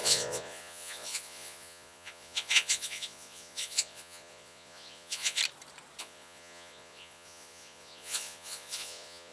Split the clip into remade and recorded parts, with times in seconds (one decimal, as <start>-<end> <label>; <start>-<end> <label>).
0.0-5.4 remade; 5.4-6.0 recorded; 6.0-9.3 remade